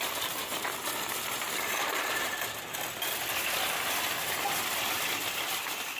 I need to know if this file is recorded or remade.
recorded